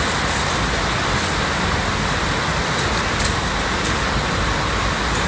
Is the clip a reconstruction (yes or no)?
no